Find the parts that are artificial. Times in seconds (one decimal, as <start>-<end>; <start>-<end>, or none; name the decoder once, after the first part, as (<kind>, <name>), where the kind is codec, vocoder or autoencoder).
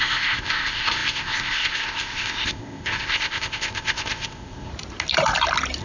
0.0-4.7 (codec, ZipCodec)